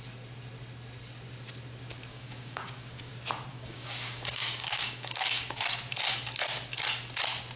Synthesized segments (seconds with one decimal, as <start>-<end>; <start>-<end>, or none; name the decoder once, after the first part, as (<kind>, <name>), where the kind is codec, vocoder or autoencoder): 2.1-3.1 (codec, DAC); 3.5-5.6